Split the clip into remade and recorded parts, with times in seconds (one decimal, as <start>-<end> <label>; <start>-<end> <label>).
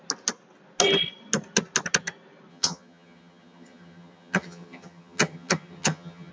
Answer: 0.0-2.5 recorded; 2.5-6.3 remade